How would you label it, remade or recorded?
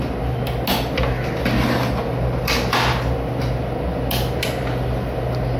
recorded